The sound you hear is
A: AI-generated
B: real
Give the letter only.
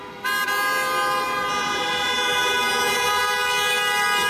B